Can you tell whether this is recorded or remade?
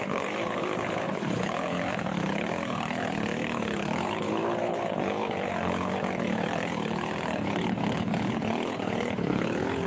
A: remade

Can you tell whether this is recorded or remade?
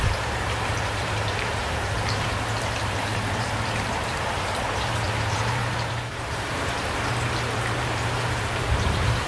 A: remade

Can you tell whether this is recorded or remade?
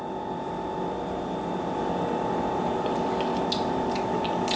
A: recorded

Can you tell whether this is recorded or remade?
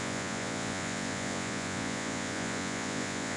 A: remade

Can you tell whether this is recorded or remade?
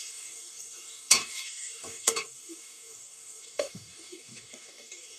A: remade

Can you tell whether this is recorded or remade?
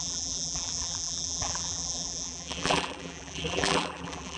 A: remade